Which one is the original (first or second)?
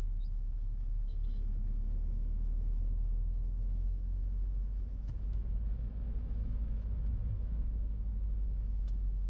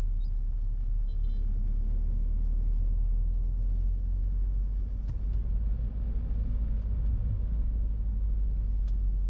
second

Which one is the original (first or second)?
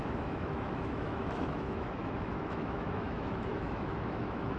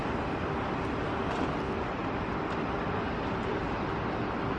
second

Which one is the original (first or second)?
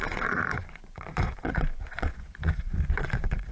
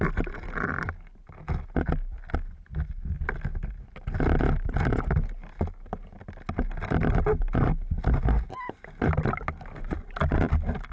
second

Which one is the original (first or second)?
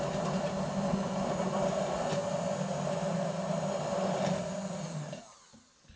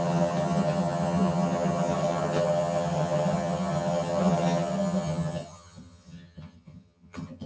first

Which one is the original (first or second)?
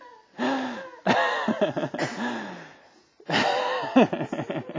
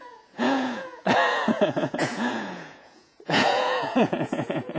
first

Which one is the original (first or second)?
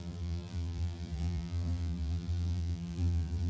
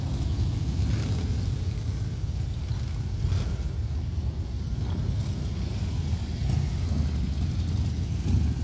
second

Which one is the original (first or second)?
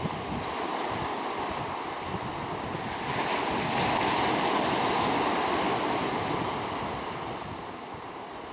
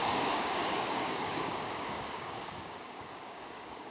first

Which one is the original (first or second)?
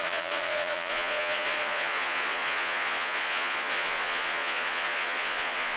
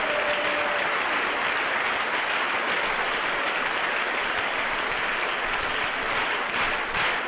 second